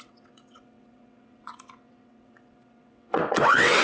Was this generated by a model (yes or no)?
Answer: yes